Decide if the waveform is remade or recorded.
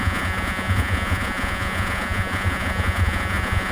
remade